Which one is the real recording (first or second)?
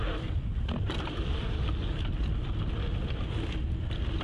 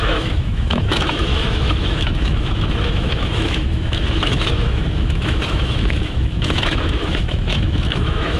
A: first